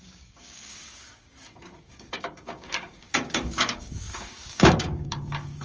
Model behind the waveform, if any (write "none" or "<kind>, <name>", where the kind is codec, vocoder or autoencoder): codec, DAC